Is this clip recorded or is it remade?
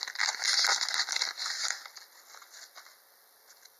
recorded